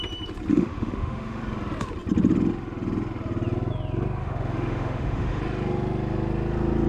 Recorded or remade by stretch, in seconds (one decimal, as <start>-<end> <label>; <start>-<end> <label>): 0.0-0.5 recorded; 0.5-1.4 remade; 1.4-4.2 recorded; 4.2-5.4 remade; 5.4-6.9 recorded